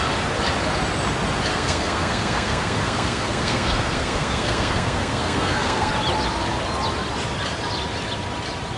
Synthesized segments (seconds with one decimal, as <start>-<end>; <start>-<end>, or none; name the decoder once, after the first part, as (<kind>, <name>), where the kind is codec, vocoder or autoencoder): 1.5-5.9 (codec, SNAC)